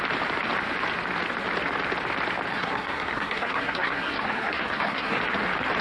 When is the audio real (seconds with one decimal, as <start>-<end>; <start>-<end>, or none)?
0.0-2.5; 5.2-5.8